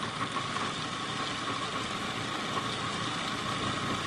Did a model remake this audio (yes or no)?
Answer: no